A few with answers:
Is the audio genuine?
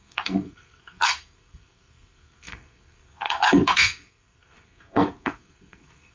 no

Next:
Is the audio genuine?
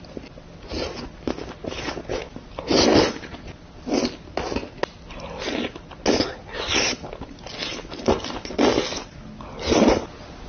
yes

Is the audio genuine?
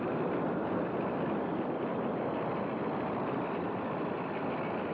yes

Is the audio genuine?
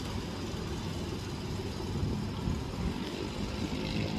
yes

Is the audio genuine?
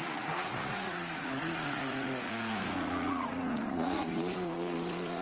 no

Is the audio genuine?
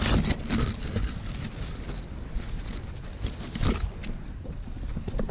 yes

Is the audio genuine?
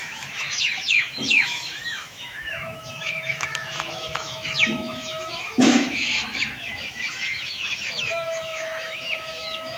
no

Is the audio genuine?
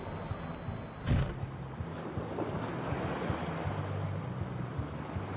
yes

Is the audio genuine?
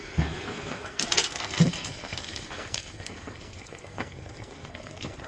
no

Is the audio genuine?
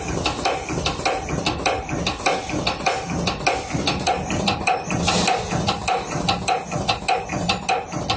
yes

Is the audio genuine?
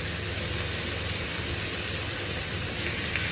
yes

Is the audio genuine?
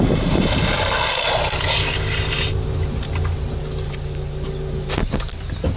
yes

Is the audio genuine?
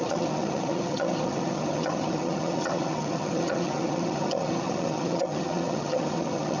no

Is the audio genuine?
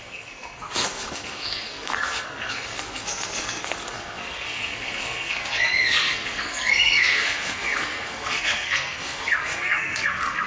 no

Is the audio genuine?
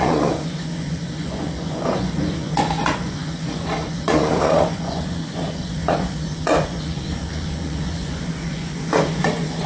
no